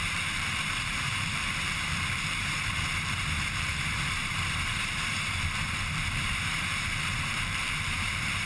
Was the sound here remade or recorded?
remade